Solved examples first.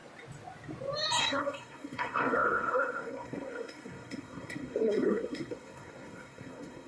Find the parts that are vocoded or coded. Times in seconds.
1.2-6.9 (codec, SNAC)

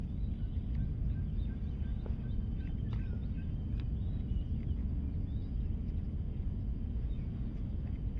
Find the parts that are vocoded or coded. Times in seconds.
4.8-8.2 (vocoder, Vocos)

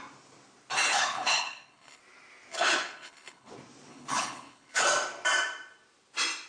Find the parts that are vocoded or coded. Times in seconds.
0.9-2.0 (codec, HILCodec); 2.5-3.5; 3.9-4.8

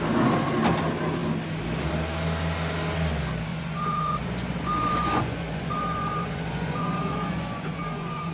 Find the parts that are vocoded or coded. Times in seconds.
3.5-8.3 (vocoder, Vocos)